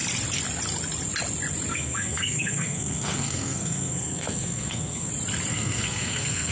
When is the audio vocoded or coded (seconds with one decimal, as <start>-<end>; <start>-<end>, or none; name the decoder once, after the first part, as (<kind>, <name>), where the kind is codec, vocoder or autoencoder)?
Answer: 1.7-5.1 (codec, SNAC); 5.5-6.5